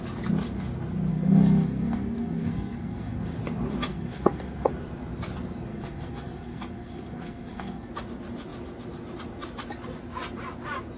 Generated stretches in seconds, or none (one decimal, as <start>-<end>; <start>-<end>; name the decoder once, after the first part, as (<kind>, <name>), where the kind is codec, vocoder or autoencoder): 1.1-3.2 (codec, SNAC); 3.9-4.7; 5.7-7.9